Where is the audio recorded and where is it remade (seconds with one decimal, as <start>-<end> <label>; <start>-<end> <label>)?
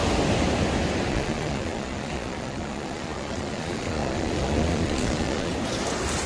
0.0-1.1 recorded; 1.1-5.5 remade; 5.5-6.3 recorded